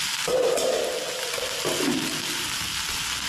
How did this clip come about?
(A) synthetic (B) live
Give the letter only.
B